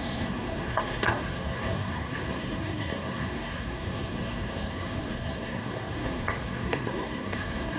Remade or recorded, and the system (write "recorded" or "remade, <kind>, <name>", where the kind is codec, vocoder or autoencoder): remade, codec, SNAC